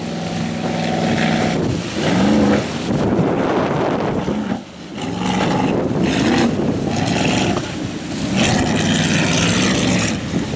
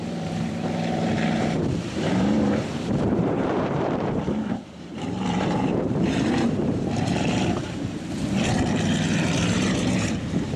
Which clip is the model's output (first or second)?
second